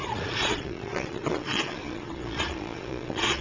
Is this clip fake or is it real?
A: fake